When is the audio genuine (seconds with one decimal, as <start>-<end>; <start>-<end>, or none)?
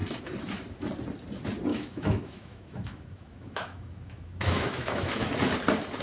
0.0-1.7; 5.3-6.0